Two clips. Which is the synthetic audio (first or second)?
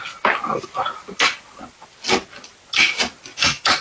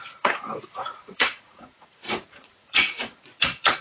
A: second